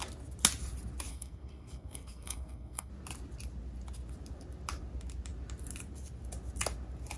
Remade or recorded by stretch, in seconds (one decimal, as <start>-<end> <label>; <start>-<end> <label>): 0.0-1.1 recorded; 1.1-2.9 remade; 2.9-7.2 recorded